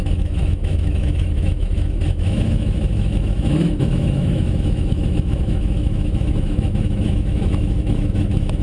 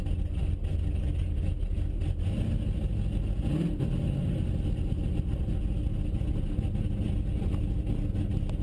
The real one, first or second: second